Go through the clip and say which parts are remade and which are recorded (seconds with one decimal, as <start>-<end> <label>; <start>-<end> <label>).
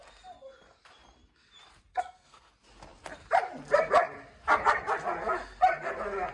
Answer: 0.0-1.9 recorded; 1.9-2.5 remade; 2.5-6.3 recorded